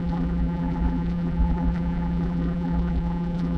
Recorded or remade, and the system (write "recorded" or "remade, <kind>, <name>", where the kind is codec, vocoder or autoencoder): remade, vocoder, BigVGAN v2